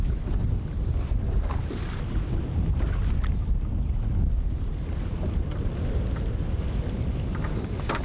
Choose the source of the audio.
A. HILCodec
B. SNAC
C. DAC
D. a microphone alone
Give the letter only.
D